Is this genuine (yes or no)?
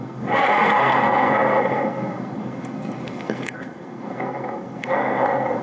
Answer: no